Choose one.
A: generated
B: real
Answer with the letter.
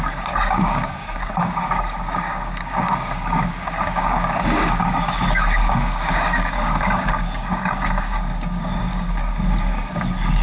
A